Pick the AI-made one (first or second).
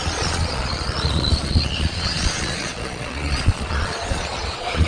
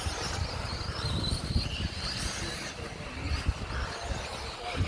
first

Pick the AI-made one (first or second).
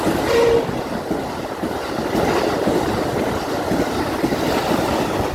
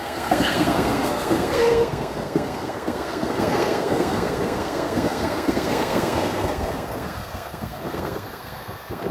second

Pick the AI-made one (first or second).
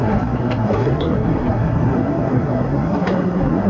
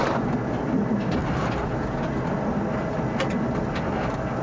first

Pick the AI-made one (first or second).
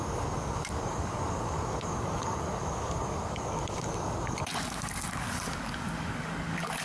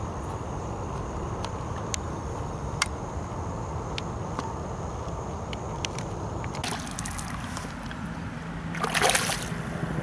first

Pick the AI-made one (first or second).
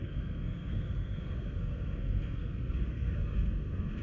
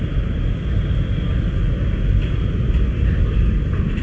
first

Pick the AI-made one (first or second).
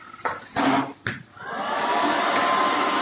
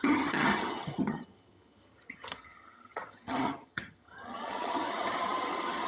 second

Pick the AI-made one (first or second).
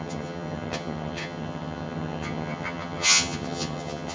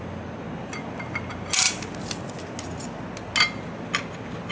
first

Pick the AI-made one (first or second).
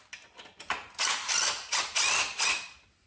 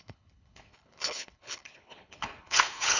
second